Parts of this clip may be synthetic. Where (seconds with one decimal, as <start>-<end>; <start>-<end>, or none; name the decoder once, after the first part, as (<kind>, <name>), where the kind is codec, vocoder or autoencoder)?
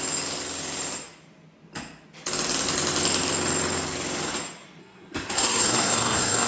4.8-6.5 (codec, SNAC)